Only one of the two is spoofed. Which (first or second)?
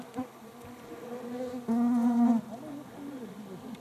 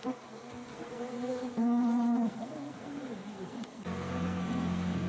second